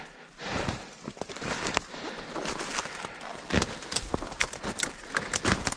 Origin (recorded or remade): recorded